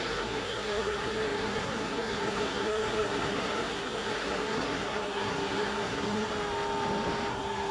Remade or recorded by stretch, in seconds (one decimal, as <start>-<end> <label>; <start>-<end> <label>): 0.0-6.3 remade; 6.3-7.3 recorded; 7.3-7.7 remade